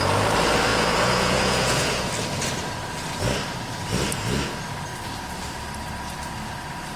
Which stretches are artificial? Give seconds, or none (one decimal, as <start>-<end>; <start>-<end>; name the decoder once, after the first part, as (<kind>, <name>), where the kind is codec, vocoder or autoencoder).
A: 0.7-2.1 (vocoder, Vocos)